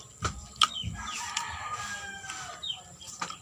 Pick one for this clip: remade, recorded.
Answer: remade